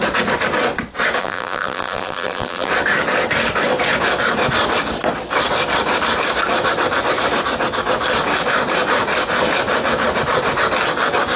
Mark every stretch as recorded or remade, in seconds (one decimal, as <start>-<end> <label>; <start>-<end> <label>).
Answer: 0.0-1.2 recorded; 1.2-2.7 remade; 2.7-11.4 recorded